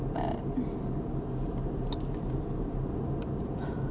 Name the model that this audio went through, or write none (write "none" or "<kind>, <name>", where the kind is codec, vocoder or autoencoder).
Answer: none